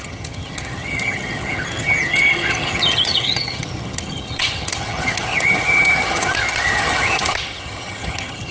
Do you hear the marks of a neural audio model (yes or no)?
yes